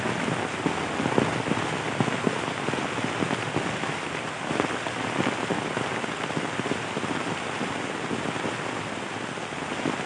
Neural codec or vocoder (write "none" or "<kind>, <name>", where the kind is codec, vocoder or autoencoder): none